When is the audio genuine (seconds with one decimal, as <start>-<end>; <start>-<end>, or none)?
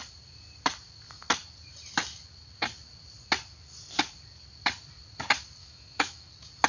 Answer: 0.0-5.6; 6.3-6.7